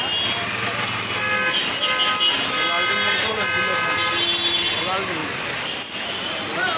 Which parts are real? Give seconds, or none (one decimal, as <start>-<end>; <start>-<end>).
0.0-6.8